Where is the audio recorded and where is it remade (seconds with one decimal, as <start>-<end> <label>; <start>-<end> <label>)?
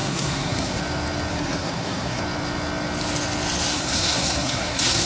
0.0-0.8 remade; 0.8-1.3 recorded; 1.3-2.2 remade; 2.2-3.7 recorded; 3.7-5.1 remade